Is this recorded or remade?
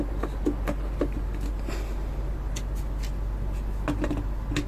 recorded